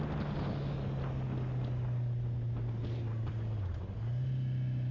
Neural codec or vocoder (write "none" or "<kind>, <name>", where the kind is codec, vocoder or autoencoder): none